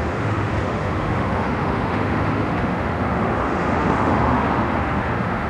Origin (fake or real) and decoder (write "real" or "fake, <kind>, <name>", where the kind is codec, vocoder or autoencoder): fake, autoencoder, DAC-VAE